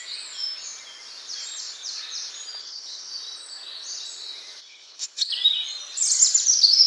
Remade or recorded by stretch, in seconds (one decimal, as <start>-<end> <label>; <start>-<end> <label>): 0.0-2.6 recorded; 2.6-3.1 remade; 3.1-4.6 recorded; 4.6-5.3 remade; 5.3-6.9 recorded